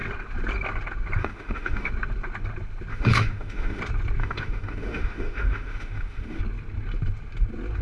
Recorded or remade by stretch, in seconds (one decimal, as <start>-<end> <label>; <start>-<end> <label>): 0.0-1.2 recorded; 1.2-1.9 remade; 1.9-2.9 recorded; 2.9-3.8 remade; 3.8-4.2 recorded; 4.2-6.4 remade; 6.4-7.8 recorded